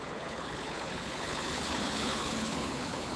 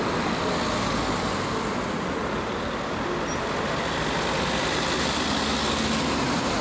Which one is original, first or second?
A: second